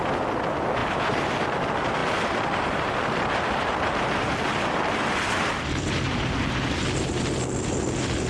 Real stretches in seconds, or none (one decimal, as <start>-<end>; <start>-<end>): 0.0-8.3